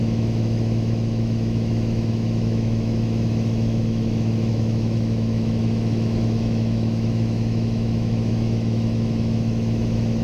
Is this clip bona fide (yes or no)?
no